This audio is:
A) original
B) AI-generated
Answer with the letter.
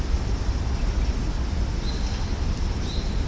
A